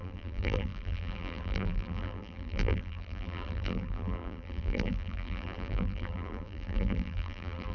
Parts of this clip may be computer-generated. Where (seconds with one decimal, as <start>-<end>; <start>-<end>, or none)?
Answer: 0.0-7.7